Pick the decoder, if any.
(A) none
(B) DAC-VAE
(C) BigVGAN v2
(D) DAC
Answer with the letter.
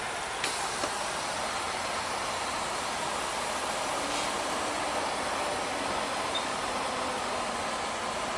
A